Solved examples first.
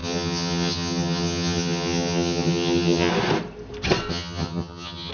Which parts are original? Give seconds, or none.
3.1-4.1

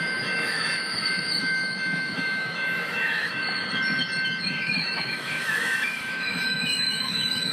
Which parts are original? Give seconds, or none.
3.4-4.5

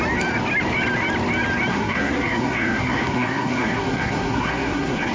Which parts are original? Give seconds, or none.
0.0-1.7

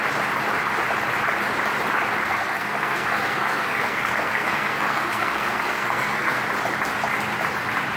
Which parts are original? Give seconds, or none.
0.0-2.2; 6.4-8.0

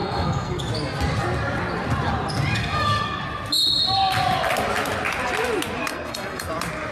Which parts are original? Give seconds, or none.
0.6-2.6; 3.2-5.9; 6.5-6.9